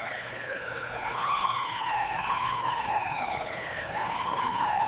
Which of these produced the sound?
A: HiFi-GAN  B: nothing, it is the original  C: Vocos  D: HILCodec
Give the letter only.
D